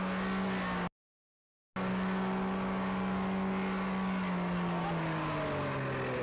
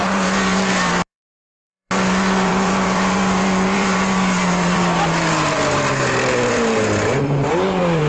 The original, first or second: first